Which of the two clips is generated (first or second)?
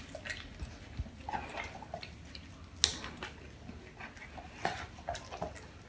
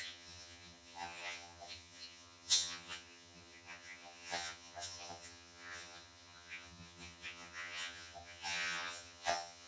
second